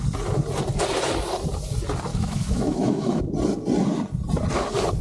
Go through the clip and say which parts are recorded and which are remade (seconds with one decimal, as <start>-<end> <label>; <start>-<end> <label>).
0.0-2.1 recorded; 2.1-3.2 remade; 3.2-5.0 recorded